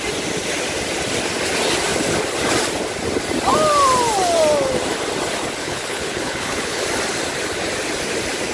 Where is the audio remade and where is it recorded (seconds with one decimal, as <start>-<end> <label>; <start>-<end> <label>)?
0.0-5.6 recorded; 5.6-6.8 remade; 6.8-8.5 recorded